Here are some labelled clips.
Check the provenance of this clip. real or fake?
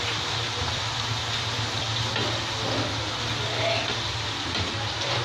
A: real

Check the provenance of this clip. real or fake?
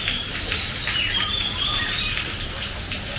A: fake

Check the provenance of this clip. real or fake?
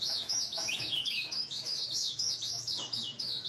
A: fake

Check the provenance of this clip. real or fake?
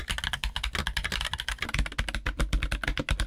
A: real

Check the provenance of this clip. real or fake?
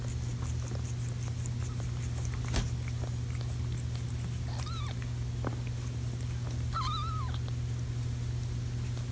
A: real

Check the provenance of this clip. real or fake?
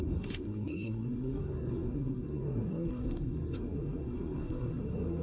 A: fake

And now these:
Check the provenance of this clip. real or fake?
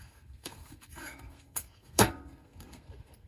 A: fake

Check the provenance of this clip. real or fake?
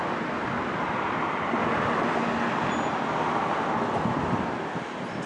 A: real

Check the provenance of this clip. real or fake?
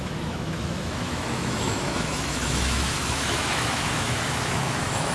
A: fake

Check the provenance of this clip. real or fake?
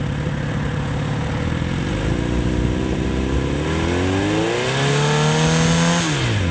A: real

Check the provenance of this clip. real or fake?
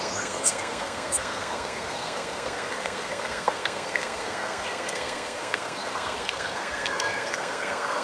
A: fake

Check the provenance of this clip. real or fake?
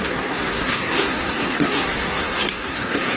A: fake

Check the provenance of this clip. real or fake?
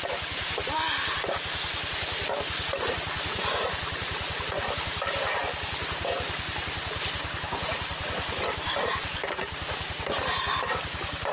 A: real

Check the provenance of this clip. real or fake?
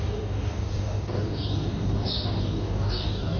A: fake